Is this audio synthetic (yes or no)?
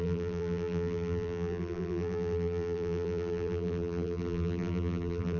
yes